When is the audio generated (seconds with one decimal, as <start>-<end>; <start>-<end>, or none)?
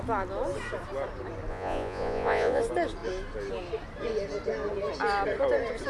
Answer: 1.5-2.6